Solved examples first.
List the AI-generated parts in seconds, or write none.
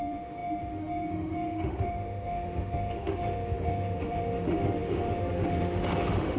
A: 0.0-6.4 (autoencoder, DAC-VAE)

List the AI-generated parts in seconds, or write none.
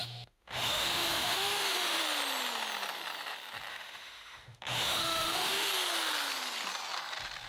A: 0.0-2.0 (autoencoder, DAC-VAE); 3.7-5.7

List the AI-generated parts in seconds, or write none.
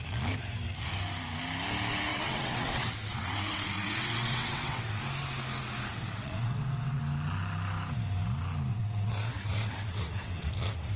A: 2.1-5.0 (vocoder, WaveNeXt); 5.9-7.0; 8.7-10.5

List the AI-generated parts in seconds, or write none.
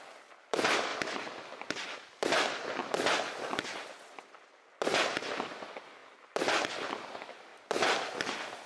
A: 0.0-2.8 (vocoder, BigVGAN v2); 5.0-6.0; 6.7-7.5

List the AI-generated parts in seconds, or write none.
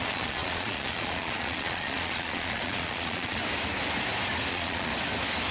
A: 0.0-3.4 (vocoder, Vocos); 4.5-4.9